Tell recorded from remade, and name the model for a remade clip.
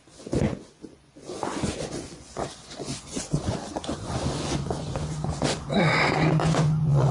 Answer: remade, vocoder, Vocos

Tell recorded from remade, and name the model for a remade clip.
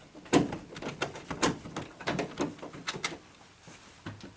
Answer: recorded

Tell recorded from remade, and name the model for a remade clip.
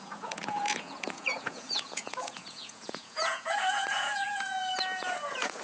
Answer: remade, vocoder, Vocos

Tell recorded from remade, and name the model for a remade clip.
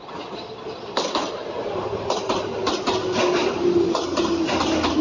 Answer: recorded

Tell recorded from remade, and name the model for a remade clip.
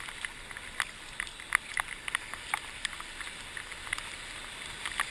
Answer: recorded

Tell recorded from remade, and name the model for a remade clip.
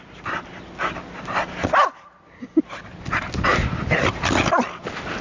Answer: recorded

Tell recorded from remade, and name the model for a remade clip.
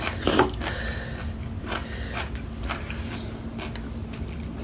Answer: recorded